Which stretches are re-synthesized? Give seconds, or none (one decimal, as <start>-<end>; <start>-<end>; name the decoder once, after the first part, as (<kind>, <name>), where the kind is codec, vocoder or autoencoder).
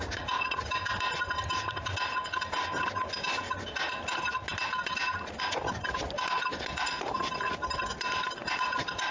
none